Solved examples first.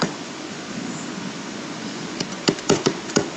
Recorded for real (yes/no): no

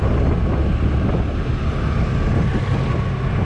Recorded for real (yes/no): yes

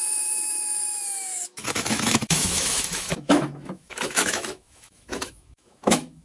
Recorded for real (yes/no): no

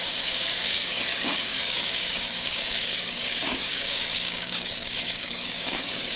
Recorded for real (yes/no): no